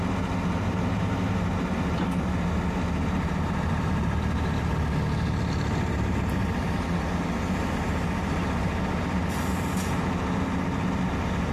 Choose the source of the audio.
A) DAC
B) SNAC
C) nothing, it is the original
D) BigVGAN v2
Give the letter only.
C